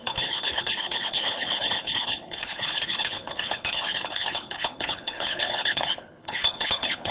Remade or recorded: remade